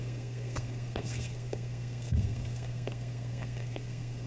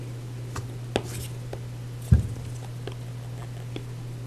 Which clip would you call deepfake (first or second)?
first